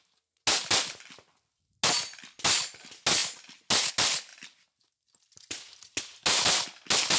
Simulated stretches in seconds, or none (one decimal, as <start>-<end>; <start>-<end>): none